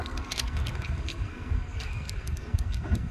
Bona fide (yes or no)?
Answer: no